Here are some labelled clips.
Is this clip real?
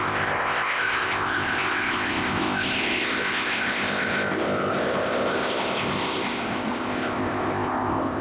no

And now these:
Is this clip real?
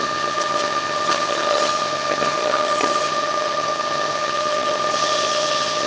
no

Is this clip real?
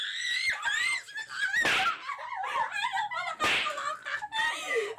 yes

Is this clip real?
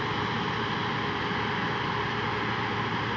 yes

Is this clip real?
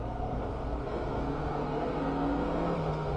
no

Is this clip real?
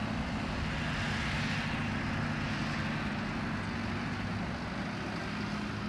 yes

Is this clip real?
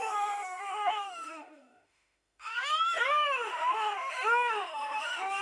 no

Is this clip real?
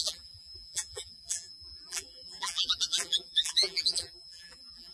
no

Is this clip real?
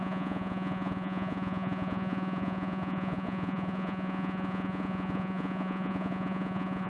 no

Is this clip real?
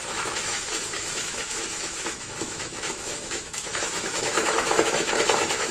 no